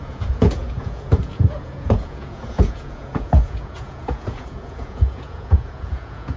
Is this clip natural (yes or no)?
no